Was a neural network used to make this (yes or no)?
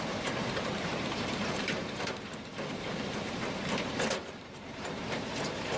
yes